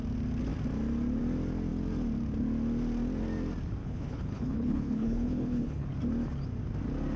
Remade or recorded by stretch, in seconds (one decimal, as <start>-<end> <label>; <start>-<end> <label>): 0.0-3.8 recorded; 3.8-5.9 remade; 5.9-7.2 recorded